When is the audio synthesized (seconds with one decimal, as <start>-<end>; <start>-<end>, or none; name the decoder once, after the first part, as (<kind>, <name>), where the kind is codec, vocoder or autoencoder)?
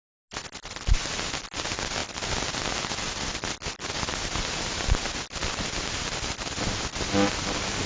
none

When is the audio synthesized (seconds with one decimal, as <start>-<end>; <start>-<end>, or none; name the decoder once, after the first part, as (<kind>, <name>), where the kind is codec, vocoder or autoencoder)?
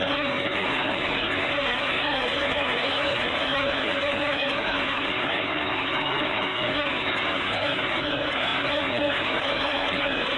0.0-10.4 (codec, SNAC)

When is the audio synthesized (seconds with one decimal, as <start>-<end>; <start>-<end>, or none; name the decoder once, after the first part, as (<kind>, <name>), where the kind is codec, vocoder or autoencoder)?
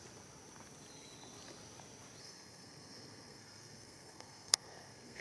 2.2-5.2 (codec, SNAC)